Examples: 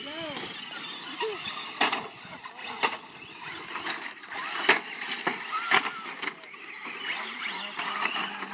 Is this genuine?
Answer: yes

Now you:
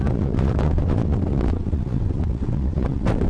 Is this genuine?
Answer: no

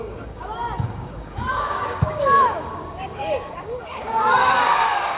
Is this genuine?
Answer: no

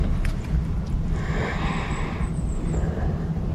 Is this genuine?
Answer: yes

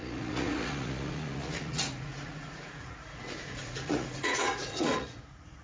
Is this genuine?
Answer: no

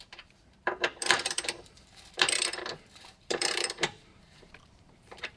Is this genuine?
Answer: no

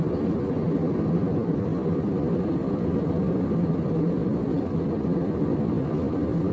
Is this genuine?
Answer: yes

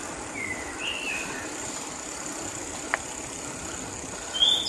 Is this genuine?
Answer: yes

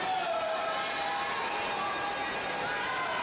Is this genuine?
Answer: yes